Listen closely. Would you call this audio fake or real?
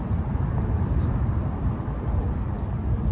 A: real